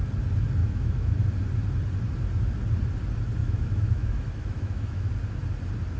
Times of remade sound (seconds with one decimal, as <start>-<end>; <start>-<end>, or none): 0.6-1.3; 3.4-5.1

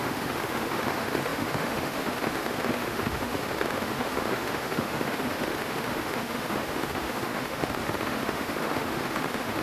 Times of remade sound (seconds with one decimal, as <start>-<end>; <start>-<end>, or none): 0.0-9.6

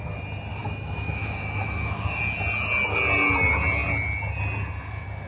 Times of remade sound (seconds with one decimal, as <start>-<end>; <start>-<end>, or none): 0.5-2.2

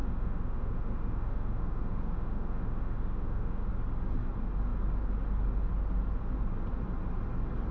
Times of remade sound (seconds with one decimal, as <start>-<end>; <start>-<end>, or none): 0.0-3.7

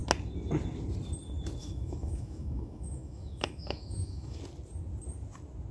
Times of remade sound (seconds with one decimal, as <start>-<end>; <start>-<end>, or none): 1.6-4.4

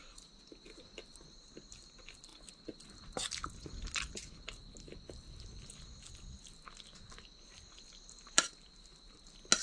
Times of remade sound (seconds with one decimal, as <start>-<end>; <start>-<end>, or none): none